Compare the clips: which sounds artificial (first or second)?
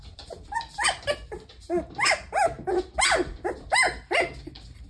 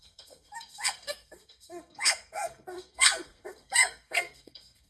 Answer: second